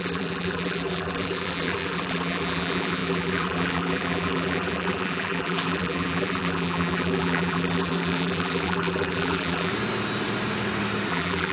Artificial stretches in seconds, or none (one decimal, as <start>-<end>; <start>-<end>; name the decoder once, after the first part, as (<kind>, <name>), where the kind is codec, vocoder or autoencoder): 0.0-9.7 (vocoder, BigVGAN v2); 11.1-11.5